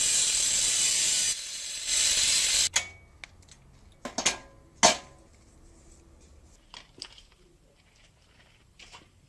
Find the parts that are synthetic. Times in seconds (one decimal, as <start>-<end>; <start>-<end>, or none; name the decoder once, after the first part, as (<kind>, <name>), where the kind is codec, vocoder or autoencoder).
0.0-2.4 (vocoder, BigVGAN v2); 5.2-9.3